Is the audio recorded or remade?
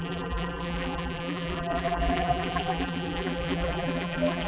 remade